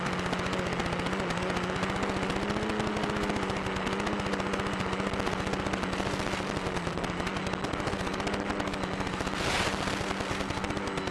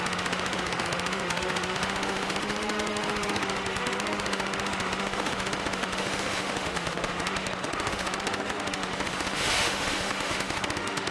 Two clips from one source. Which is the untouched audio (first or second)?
first